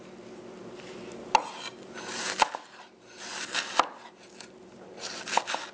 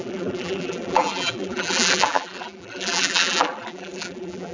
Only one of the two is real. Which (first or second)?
first